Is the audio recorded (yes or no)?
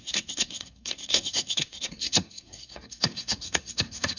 no